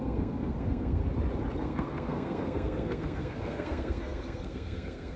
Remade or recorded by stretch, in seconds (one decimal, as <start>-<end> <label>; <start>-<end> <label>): 0.0-1.0 remade; 1.0-1.6 recorded; 1.6-5.2 remade